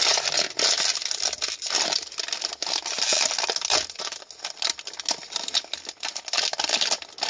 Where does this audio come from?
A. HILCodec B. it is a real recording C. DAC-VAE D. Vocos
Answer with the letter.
B